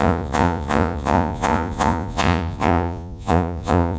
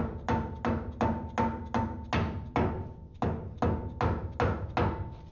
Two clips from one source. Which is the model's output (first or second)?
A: first